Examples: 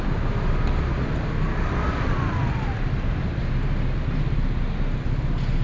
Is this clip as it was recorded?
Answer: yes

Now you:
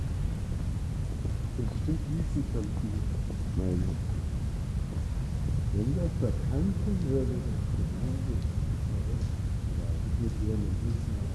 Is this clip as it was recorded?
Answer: yes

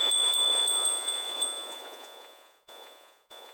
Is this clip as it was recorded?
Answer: no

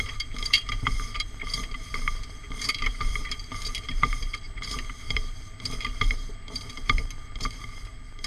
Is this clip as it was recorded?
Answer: no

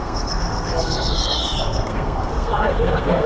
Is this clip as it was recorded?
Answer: no